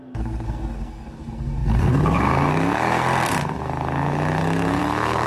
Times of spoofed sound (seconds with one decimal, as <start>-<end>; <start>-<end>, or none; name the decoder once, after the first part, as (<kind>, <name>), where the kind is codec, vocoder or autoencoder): 0.0-5.3 (codec, SNAC)